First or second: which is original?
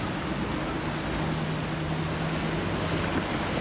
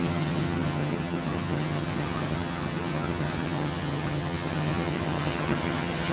first